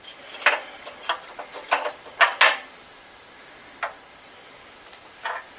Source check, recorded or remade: recorded